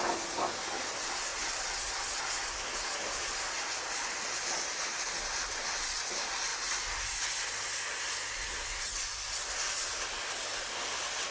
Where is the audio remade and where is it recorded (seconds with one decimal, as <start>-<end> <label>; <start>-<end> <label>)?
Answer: 0.0-11.3 recorded